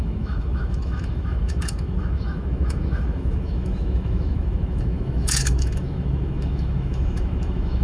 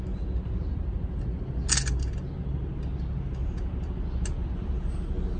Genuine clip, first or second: second